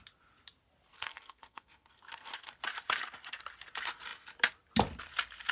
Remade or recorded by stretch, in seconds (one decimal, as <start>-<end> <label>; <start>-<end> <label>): 0.0-0.9 recorded; 0.9-2.5 remade; 2.5-5.5 recorded